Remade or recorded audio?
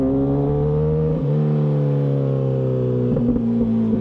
recorded